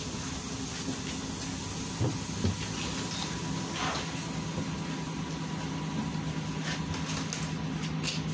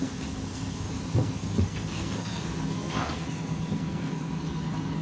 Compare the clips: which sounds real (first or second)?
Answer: first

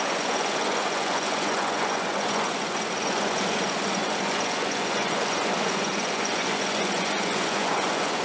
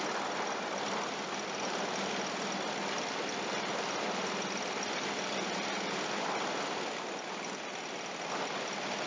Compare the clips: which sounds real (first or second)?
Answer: second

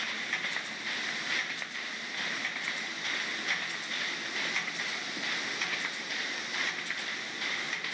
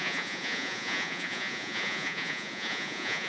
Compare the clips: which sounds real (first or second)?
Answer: first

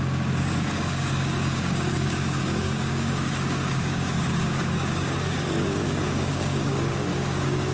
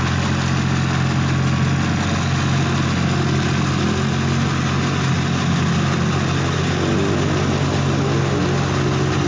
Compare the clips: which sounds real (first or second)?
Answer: second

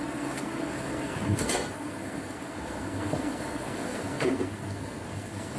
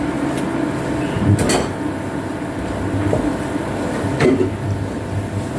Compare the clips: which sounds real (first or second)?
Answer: second